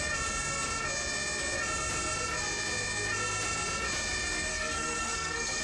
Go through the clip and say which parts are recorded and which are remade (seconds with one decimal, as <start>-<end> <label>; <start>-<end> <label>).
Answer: 0.0-4.5 recorded; 4.5-5.6 remade